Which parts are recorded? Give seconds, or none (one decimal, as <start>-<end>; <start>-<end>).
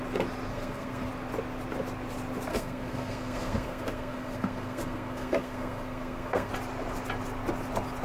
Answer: 0.0-0.5; 1.1-2.5; 6.5-8.0